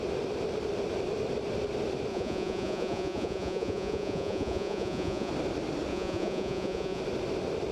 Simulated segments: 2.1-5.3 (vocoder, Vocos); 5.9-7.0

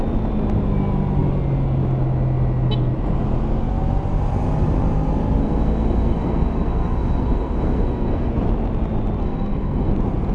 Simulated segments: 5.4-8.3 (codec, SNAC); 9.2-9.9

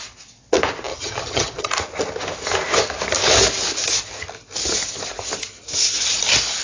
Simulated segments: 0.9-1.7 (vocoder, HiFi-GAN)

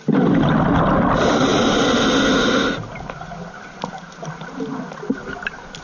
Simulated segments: none

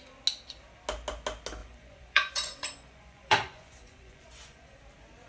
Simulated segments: 1.6-4.8 (vocoder, Vocos)

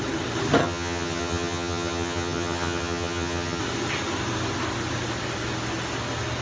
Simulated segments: 0.6-3.6 (vocoder, HiFi-GAN)